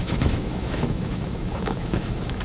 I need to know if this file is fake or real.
fake